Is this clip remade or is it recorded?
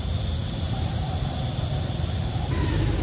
recorded